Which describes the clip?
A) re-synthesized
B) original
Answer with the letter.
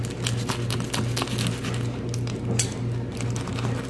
B